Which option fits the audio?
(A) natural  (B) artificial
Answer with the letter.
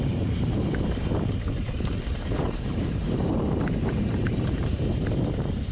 B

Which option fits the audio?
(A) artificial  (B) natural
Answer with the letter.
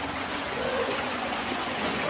A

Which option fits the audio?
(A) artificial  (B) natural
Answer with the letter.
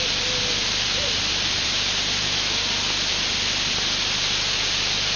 B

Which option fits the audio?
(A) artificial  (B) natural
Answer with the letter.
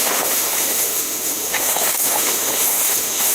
A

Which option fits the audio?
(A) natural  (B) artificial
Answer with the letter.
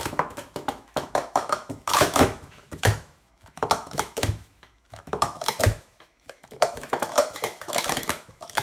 B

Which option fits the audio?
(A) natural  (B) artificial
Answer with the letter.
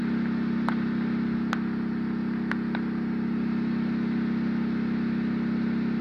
A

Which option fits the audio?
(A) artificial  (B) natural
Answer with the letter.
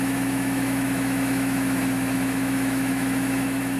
A